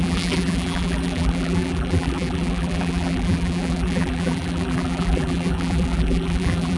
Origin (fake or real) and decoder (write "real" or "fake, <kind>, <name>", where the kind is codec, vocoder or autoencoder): fake, vocoder, BigVGAN v2